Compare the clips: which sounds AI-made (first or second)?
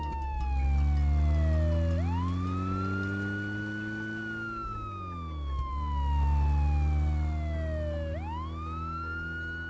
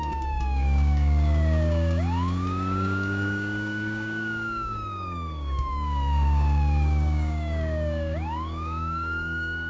second